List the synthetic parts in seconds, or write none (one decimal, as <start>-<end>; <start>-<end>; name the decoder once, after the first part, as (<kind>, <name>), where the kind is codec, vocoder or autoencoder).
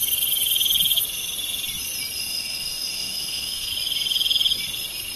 2.2-3.7 (autoencoder, DAC-VAE)